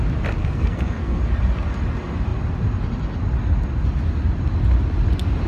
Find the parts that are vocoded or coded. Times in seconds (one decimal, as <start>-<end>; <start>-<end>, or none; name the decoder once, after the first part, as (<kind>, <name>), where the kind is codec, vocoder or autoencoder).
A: 0.4-1.2 (codec, SNAC)